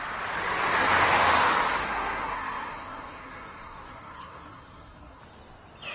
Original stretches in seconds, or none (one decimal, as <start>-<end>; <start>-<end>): 0.0-1.8; 5.2-5.9